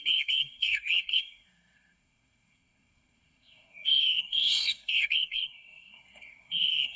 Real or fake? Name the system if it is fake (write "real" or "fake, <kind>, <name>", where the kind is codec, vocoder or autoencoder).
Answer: fake, codec, SNAC